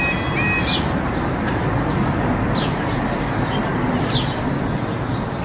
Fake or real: real